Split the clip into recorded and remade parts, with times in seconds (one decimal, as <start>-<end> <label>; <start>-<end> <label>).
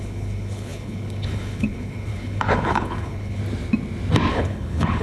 0.0-3.4 remade; 3.4-4.3 recorded; 4.3-5.0 remade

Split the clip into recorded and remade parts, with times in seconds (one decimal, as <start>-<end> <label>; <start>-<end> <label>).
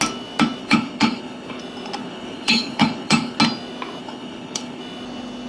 0.0-0.6 recorded; 0.6-1.6 remade; 1.6-2.0 recorded; 2.0-3.4 remade; 3.4-4.0 recorded; 4.0-4.8 remade; 4.8-5.5 recorded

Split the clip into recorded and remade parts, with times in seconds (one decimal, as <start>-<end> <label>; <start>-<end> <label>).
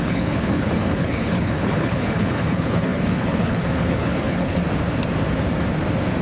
0.0-4.6 remade; 4.6-6.2 recorded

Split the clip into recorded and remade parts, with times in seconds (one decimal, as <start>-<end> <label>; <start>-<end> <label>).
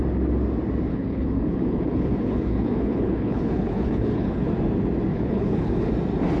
0.0-0.9 recorded; 0.9-4.5 remade; 4.5-5.1 recorded; 5.1-5.9 remade; 5.9-6.4 recorded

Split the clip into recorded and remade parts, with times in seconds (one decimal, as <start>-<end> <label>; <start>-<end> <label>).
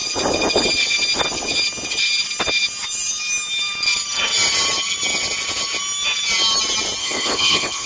0.0-7.0 recorded; 7.0-7.9 remade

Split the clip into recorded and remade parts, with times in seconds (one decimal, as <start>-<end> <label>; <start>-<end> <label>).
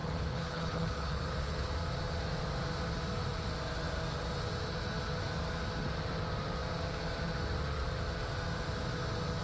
0.0-1.7 remade; 1.7-9.4 recorded